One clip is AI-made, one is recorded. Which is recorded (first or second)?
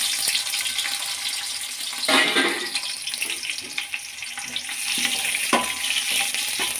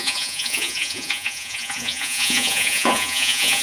first